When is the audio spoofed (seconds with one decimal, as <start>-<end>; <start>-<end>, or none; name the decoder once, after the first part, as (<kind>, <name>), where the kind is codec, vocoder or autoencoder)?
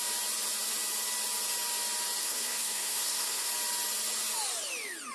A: 2.2-3.5 (codec, SNAC)